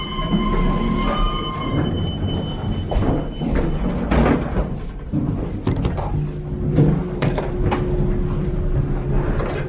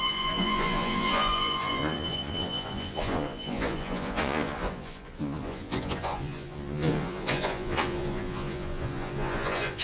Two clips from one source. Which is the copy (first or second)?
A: second